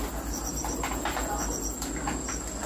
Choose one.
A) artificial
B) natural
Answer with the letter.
B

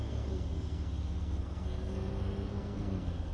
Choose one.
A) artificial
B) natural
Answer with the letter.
A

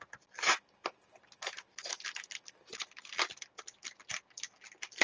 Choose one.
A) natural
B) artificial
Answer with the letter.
A